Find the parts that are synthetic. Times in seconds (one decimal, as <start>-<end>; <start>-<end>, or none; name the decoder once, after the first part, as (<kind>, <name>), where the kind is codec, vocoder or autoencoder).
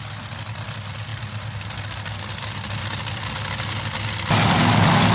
none